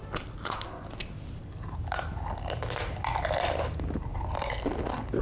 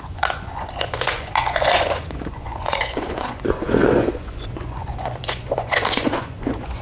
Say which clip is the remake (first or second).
second